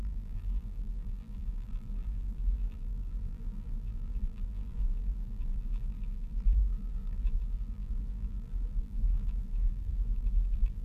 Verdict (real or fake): fake